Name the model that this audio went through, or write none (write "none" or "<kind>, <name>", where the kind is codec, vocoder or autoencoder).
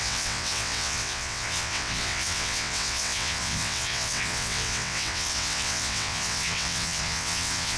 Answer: vocoder, WaveNeXt